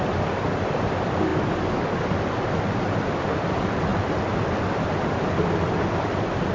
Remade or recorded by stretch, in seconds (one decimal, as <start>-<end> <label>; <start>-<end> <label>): 0.0-1.3 remade; 1.3-2.9 recorded; 2.9-3.9 remade; 3.9-5.4 recorded; 5.4-6.5 remade